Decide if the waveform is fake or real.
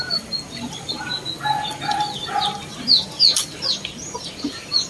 real